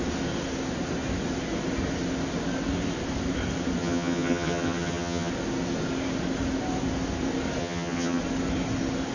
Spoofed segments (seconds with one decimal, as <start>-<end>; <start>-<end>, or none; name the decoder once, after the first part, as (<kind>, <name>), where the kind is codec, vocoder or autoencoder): 3.8-5.3 (vocoder, HiFi-GAN); 7.6-8.2